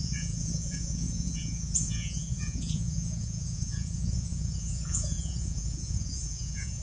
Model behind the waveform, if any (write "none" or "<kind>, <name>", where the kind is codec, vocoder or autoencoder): vocoder, Vocos